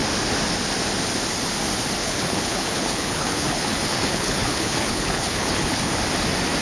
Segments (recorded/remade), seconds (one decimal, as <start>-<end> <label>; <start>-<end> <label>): 0.0-2.0 recorded; 2.0-6.0 remade; 6.0-6.6 recorded